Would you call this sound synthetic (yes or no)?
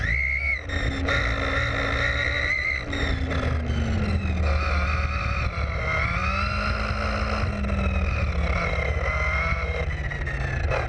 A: no